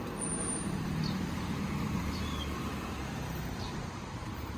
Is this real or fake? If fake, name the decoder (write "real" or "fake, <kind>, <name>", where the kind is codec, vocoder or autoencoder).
fake, vocoder, BigVGAN v2